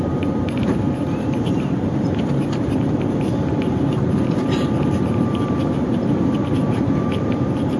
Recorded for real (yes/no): no